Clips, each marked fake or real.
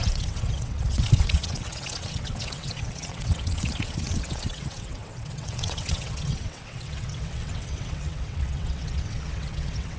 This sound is fake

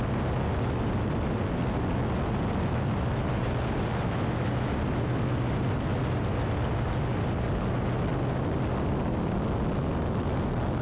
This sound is real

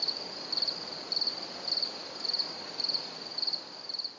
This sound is real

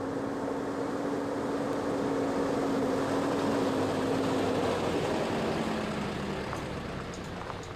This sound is real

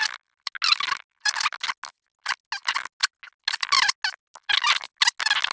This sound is real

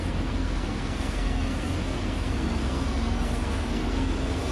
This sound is fake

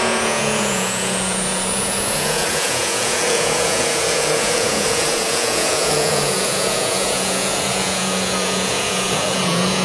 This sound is fake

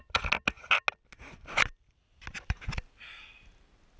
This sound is real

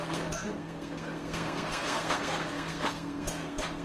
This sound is fake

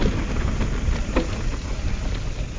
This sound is real